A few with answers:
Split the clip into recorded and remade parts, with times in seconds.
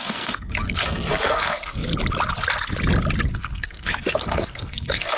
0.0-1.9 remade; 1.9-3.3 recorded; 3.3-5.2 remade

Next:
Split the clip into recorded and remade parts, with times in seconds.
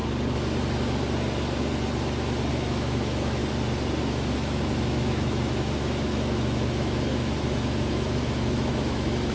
0.0-2.5 recorded; 2.5-3.4 remade; 3.4-4.0 recorded; 4.0-9.3 remade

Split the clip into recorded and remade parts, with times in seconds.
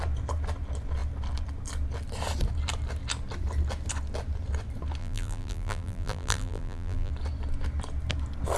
0.0-5.0 recorded; 5.0-7.1 remade; 7.1-8.6 recorded